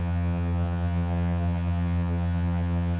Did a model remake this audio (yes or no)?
yes